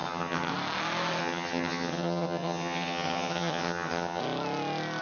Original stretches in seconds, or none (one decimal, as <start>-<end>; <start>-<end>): 0.5-1.2; 4.2-5.0